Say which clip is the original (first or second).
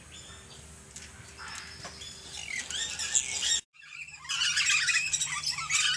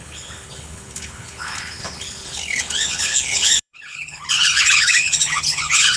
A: first